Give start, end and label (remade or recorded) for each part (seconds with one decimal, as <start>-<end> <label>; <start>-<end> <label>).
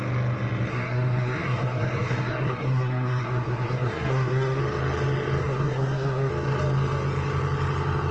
0.0-0.7 recorded; 0.7-4.6 remade; 4.6-5.4 recorded; 5.4-6.3 remade; 6.3-8.1 recorded